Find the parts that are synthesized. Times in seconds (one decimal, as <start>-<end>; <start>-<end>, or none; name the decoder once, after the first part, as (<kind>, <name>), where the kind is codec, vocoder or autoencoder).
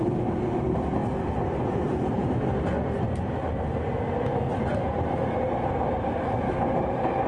none